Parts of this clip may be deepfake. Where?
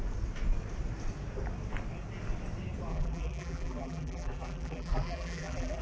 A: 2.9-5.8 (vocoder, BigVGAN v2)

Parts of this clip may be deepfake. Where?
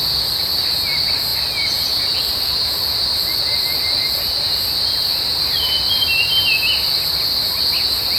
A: none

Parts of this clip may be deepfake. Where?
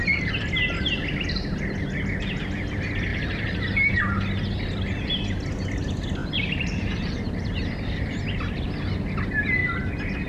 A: 3.1-4.0 (vocoder, BigVGAN v2); 6.2-8.2